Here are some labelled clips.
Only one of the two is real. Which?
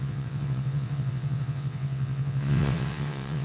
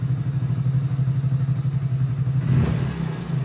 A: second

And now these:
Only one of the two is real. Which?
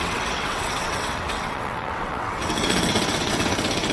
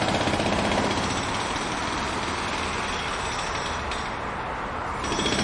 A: second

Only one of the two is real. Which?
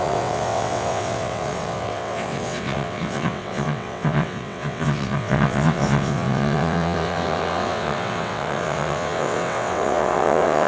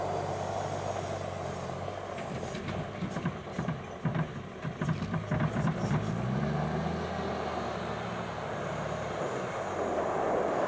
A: second